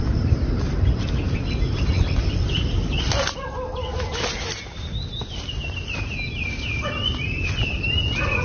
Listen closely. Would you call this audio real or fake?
real